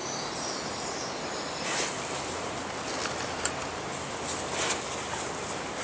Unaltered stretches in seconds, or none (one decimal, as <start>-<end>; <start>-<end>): 0.0-5.8